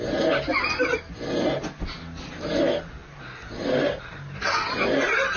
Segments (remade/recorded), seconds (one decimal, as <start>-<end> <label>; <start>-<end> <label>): 0.0-5.4 recorded